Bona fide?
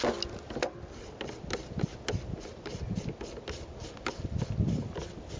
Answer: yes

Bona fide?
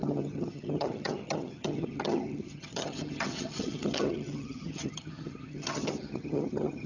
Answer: no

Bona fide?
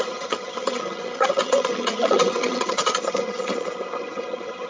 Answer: no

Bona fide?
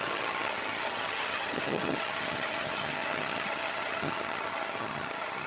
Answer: no